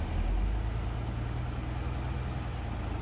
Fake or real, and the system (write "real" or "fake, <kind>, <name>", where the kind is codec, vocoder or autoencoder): real